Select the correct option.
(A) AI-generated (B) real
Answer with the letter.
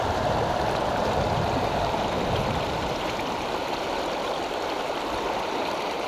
A